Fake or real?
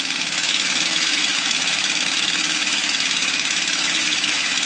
fake